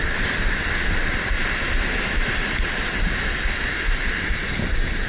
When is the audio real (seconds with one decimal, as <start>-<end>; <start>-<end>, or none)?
0.0-5.1